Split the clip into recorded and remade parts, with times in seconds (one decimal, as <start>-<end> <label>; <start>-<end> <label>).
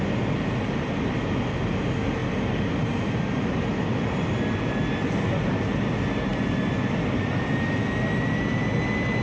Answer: 0.0-9.2 recorded